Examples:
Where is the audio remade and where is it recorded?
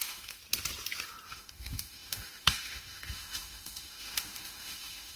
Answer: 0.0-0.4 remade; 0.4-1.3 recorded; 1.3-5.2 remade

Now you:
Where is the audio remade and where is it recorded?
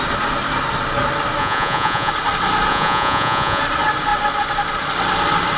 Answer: 0.0-1.4 recorded; 1.4-2.1 remade; 2.1-2.7 recorded; 2.7-3.6 remade; 3.6-5.6 recorded